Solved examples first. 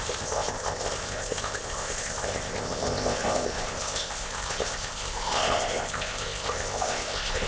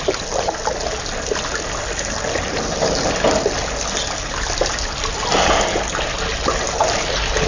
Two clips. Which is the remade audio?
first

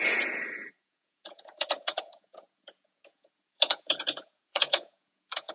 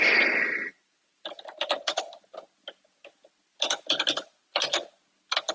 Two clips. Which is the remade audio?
first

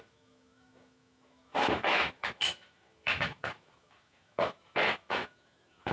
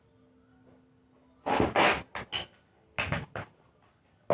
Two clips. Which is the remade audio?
first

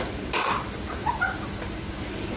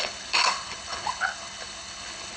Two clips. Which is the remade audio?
second